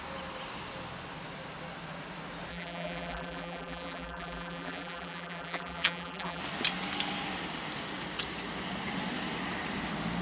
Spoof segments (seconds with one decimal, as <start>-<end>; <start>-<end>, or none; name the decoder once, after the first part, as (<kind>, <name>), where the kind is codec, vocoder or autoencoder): 2.5-6.4 (vocoder, BigVGAN v2)